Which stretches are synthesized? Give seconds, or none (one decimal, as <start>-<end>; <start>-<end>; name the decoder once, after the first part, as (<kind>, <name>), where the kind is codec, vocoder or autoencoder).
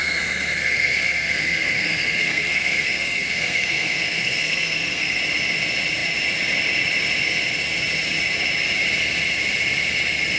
0.0-5.2 (codec, SNAC)